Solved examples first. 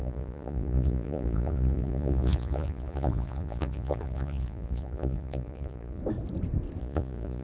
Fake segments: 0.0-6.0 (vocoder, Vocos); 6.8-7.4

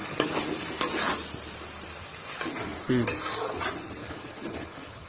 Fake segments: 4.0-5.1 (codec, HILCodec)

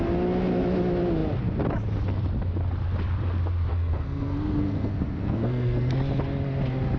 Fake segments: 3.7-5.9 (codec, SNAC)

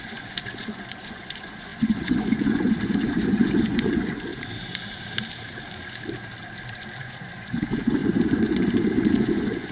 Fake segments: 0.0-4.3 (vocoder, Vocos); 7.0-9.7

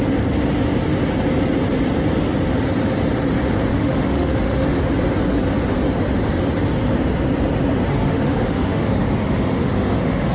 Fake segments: 3.7-4.8 (autoencoder, DAC-VAE); 7.9-10.3

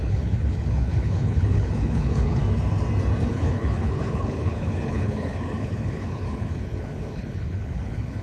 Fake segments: 0.0-2.4 (codec, HILCodec); 3.3-8.2